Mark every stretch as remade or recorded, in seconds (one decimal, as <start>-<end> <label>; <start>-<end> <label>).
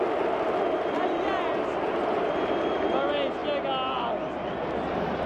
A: 0.0-5.3 recorded